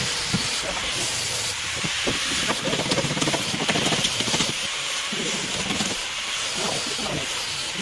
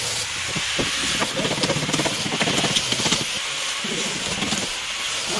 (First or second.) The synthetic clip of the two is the first